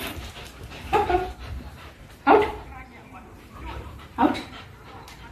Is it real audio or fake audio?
fake